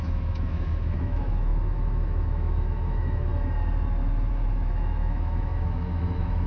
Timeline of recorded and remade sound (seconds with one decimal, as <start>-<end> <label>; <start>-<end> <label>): 0.0-3.3 remade; 3.3-4.3 recorded; 4.3-6.5 remade